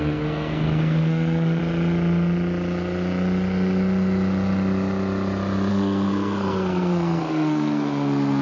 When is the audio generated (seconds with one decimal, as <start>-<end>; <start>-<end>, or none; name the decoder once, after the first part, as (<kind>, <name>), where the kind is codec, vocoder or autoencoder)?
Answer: 0.0-1.6 (codec, SNAC); 5.7-8.4

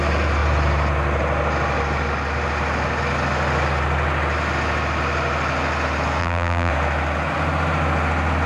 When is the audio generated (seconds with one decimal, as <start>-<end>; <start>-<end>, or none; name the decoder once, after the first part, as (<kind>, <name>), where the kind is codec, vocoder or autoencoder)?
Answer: 6.2-6.7 (vocoder, BigVGAN v2)

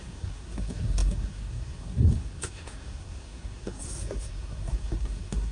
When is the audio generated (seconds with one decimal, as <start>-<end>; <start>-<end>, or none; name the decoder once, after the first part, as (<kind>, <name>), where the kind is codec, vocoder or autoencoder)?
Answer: 0.0-5.5 (codec, SNAC)

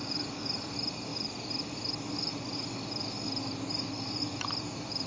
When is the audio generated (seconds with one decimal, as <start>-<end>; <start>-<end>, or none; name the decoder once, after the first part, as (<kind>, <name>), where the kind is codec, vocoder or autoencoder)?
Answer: 0.0-1.1 (vocoder, BigVGAN v2); 4.2-5.1

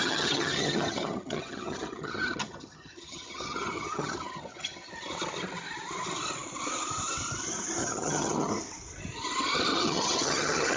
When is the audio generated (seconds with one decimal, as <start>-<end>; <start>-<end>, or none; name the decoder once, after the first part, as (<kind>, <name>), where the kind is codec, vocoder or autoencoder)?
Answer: 0.0-4.9 (vocoder, HiFi-GAN); 7.8-8.5; 9.7-10.8

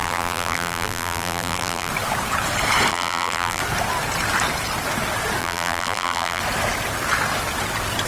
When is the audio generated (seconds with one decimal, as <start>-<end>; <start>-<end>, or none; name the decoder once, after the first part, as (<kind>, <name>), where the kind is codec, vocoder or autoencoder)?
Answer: 0.0-1.9 (vocoder, BigVGAN v2); 2.9-3.6; 5.4-6.4